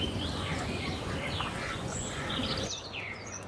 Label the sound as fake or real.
fake